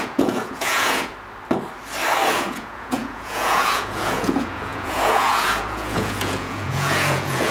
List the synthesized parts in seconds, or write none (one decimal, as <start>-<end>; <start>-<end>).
0.0-1.1; 2.3-7.5